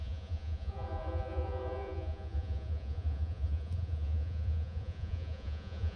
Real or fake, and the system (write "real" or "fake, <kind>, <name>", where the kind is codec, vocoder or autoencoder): fake, vocoder, Vocos